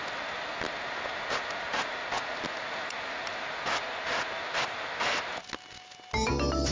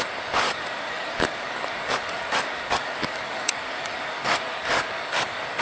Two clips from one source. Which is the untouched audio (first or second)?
first